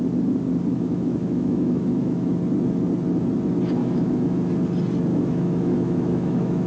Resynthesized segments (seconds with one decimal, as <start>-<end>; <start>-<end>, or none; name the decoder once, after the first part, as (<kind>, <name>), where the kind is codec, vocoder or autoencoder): 0.7-2.3 (autoencoder, DAC-VAE); 3.8-4.5; 5.1-6.7